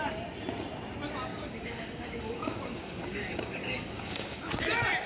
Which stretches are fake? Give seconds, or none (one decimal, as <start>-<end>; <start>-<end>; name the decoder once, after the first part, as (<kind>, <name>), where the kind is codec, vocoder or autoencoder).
1.3-4.4 (codec, DAC)